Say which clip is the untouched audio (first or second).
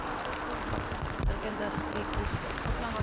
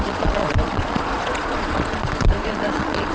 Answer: first